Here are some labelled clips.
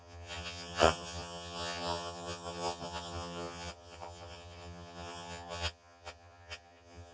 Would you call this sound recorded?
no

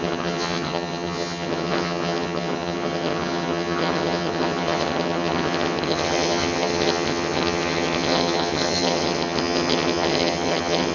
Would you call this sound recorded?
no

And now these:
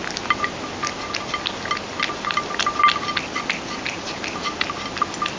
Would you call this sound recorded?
yes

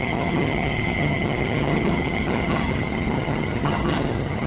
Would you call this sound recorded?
no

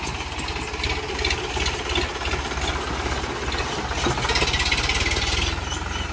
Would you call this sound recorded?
yes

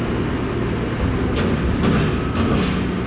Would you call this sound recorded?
yes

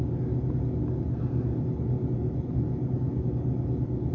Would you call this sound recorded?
yes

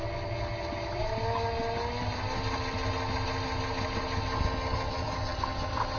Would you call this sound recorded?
yes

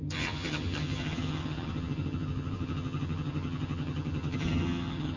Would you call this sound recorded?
no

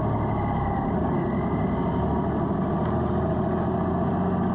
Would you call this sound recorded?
yes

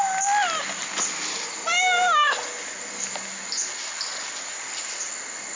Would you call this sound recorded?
yes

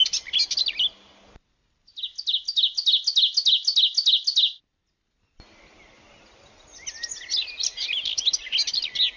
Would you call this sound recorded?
yes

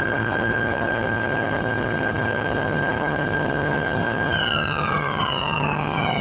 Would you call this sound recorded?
no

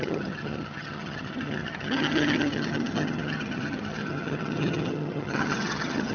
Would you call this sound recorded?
no